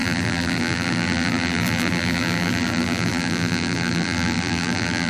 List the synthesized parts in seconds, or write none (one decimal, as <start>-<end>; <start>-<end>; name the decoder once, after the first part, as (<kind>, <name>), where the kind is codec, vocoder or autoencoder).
0.0-5.1 (vocoder, BigVGAN v2)